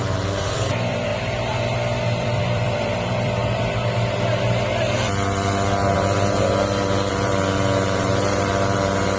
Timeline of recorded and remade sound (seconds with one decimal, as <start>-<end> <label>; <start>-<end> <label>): 0.0-3.4 remade; 3.4-7.1 recorded; 7.1-9.2 remade